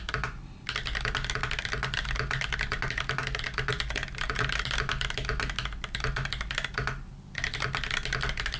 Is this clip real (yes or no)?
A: yes